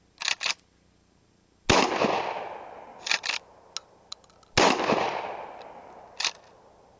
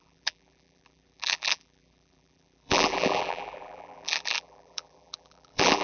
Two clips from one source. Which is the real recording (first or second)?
first